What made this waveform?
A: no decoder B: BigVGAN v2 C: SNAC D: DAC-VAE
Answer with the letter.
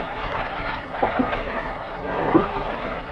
C